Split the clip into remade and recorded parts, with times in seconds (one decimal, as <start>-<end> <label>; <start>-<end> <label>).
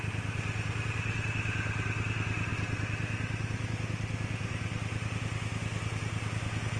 0.0-6.8 recorded